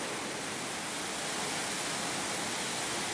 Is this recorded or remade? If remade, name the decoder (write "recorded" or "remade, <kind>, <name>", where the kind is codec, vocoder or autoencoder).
recorded